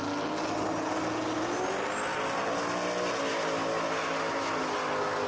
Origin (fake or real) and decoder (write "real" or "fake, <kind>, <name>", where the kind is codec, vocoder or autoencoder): real